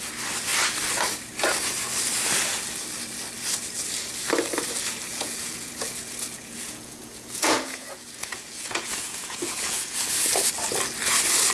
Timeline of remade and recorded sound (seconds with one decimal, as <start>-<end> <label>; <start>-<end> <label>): 0.0-5.1 recorded; 5.1-10.0 remade; 10.0-11.5 recorded